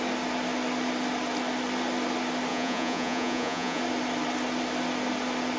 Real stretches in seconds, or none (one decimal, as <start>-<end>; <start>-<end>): 0.0-2.5; 3.8-5.6

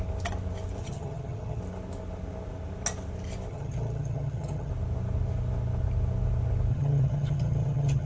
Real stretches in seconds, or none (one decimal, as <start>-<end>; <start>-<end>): 0.0-0.8; 1.6-3.5; 4.7-6.7

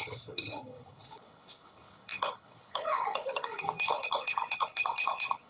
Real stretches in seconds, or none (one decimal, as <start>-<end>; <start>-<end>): none